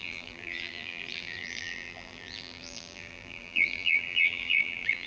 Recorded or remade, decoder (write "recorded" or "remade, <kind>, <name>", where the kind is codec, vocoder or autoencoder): remade, vocoder, BigVGAN v2